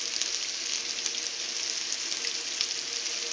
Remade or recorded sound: recorded